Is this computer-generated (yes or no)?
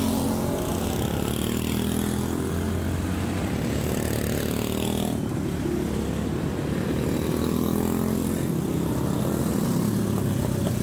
no